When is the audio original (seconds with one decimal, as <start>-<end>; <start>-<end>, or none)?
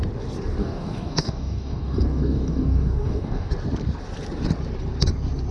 0.0-0.6; 3.5-5.5